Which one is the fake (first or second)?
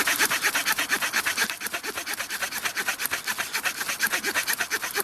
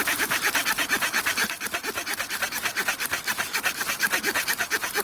second